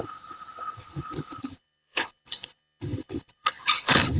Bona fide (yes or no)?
no